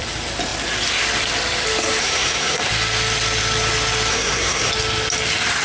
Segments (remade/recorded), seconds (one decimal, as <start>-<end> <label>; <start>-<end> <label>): 0.0-2.0 recorded; 2.0-2.6 remade; 2.6-4.1 recorded; 4.1-4.7 remade; 4.7-5.6 recorded